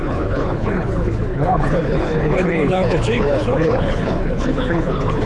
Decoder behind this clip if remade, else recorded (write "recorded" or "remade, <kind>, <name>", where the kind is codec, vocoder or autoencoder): remade, codec, HILCodec